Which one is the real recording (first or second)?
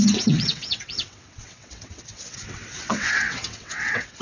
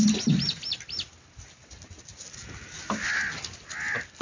second